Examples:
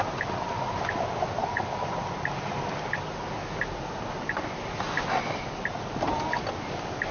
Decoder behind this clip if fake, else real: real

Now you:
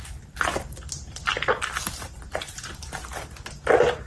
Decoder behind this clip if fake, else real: real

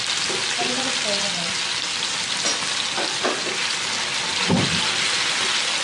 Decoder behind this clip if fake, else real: real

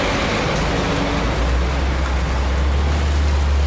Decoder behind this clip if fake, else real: real